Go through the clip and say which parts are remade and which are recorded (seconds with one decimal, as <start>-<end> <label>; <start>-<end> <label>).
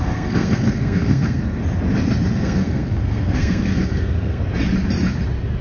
0.0-1.6 remade; 1.6-2.3 recorded; 2.3-4.4 remade; 4.4-5.6 recorded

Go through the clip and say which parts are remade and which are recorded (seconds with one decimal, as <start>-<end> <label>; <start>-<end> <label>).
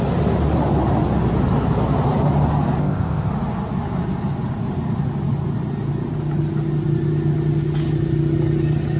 0.0-2.8 recorded; 2.8-3.3 remade; 3.3-9.0 recorded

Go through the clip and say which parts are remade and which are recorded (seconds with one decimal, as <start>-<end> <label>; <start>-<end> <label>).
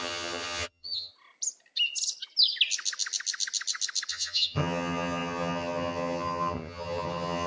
0.0-1.1 remade; 1.1-4.1 recorded; 4.1-7.5 remade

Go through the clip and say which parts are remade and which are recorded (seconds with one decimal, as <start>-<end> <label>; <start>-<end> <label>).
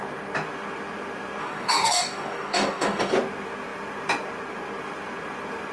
0.0-1.4 recorded; 1.4-3.1 remade; 3.1-5.7 recorded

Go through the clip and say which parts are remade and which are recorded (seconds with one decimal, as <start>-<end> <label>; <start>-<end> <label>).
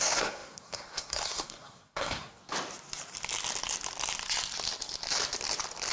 0.0-2.4 remade; 2.4-5.9 recorded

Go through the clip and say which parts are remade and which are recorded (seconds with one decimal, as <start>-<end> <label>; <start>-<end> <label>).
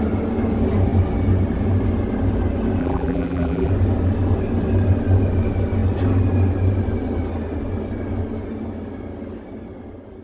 0.0-2.8 recorded; 2.8-3.7 remade; 3.7-10.2 recorded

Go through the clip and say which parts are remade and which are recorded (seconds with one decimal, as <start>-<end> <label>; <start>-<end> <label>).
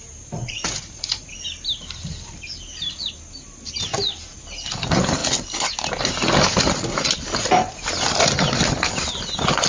0.0-0.4 recorded; 0.4-1.3 remade; 1.3-9.7 recorded